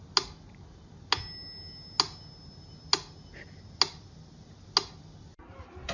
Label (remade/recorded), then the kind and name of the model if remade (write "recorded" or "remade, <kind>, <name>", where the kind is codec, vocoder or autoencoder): recorded